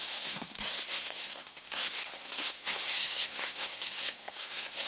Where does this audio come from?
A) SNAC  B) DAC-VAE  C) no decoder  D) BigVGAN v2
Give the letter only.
A